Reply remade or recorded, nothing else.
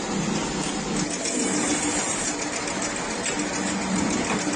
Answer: recorded